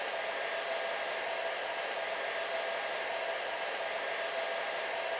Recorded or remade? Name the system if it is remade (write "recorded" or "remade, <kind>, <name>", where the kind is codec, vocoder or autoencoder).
recorded